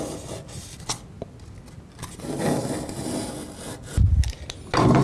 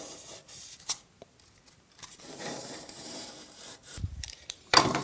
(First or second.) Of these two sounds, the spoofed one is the second